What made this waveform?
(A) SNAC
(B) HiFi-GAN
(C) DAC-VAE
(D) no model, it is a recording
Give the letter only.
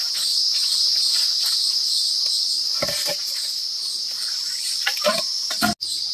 D